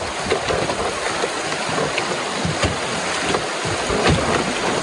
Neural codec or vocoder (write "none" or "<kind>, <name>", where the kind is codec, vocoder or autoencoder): none